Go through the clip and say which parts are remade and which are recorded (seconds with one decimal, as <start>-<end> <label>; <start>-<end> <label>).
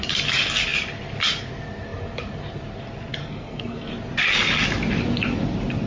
0.0-3.2 recorded; 3.2-3.9 remade; 3.9-5.9 recorded